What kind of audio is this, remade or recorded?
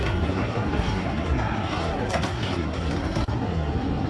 remade